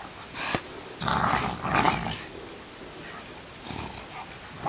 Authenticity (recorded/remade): recorded